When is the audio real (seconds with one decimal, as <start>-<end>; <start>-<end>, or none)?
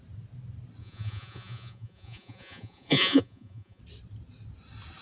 0.0-0.8; 3.8-5.0